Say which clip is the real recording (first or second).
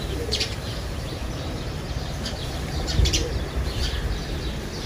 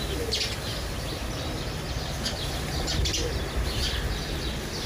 second